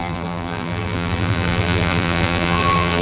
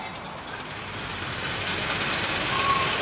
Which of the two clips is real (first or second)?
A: second